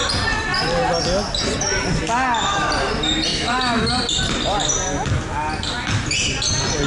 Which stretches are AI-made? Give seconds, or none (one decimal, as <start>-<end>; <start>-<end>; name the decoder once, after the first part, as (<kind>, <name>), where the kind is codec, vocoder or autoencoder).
3.3-3.9 (autoencoder, DAC-VAE)